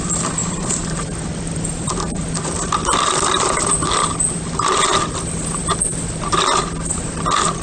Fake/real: real